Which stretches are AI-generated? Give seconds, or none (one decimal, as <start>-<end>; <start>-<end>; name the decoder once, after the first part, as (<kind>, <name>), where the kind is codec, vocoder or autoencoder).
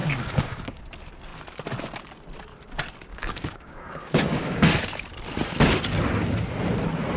0.0-0.8 (codec, DAC); 3.1-4.7